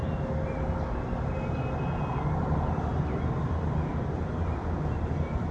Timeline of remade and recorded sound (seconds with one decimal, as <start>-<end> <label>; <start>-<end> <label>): 0.0-5.5 recorded